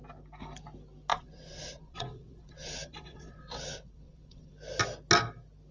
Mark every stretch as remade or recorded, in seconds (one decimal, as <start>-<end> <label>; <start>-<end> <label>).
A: 0.0-1.1 recorded; 1.1-4.5 remade; 4.5-5.7 recorded